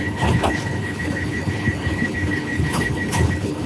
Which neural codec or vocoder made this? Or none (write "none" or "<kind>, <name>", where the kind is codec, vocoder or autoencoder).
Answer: codec, HILCodec